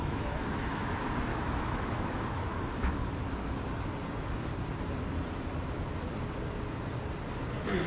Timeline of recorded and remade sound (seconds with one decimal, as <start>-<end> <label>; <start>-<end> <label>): 0.0-0.9 remade; 0.9-1.3 recorded; 1.3-3.2 remade; 3.2-7.9 recorded